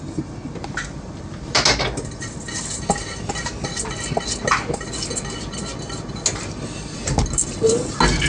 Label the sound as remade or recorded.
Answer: recorded